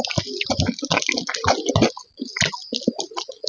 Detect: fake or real real